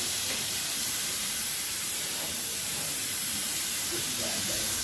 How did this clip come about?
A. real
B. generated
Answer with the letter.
B